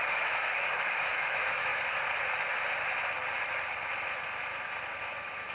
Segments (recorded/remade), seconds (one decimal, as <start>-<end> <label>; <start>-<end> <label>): 0.0-1.7 remade; 1.7-5.0 recorded; 5.0-5.5 remade